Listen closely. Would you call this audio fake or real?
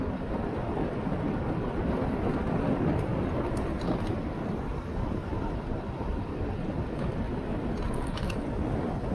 fake